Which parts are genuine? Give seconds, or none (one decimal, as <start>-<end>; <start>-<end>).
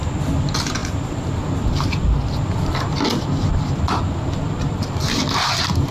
0.0-5.9